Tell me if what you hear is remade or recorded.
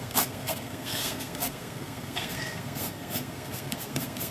remade